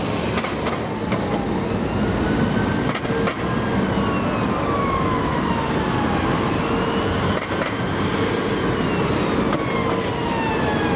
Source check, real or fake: real